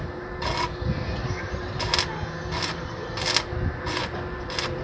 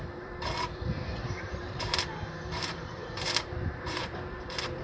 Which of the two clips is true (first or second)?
first